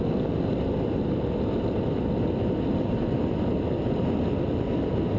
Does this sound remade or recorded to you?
recorded